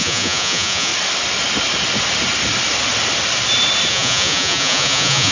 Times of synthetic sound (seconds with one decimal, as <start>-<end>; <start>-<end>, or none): 0.0-0.9; 3.9-5.3